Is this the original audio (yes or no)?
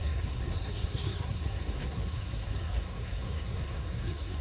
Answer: no